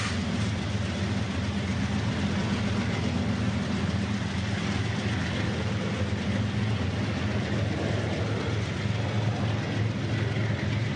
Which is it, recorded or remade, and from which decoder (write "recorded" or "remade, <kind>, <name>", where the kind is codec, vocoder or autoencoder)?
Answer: recorded